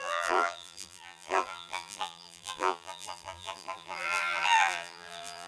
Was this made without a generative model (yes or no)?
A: no